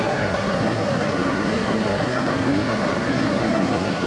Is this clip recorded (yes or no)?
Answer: no